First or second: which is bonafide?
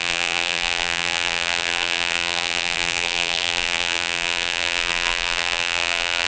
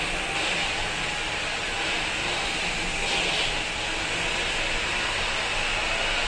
second